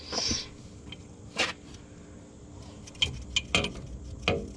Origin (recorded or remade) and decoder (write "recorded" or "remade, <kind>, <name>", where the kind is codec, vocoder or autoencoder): recorded